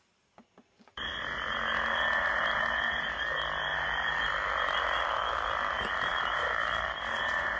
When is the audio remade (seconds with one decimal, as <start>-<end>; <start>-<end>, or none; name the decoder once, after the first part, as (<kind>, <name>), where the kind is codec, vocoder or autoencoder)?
6.1-7.0 (vocoder, BigVGAN v2)